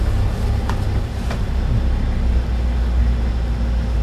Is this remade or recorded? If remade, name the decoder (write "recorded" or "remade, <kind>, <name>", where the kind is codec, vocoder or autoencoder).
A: recorded